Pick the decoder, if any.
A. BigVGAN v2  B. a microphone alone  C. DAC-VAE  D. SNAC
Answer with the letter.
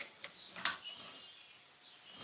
B